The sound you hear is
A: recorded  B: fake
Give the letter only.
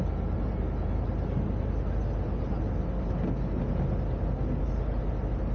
A